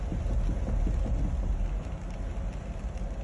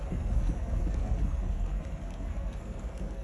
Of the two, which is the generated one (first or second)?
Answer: second